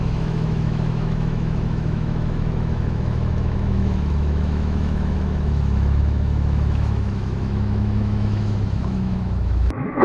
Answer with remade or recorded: remade